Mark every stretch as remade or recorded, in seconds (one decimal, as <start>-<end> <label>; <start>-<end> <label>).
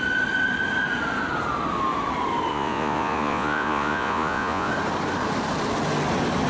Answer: 0.0-2.5 recorded; 2.5-4.7 remade; 4.7-6.5 recorded